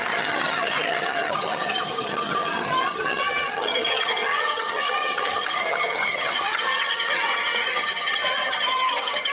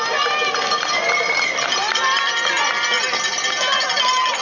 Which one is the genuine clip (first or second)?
second